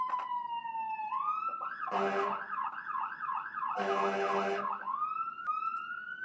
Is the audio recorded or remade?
recorded